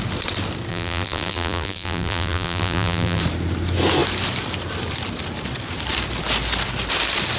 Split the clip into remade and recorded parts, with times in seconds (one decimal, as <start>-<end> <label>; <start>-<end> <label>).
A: 0.0-0.7 recorded; 0.7-3.2 remade; 3.2-7.4 recorded